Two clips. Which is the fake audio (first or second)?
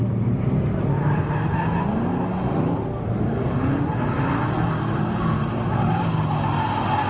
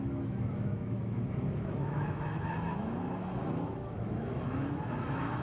second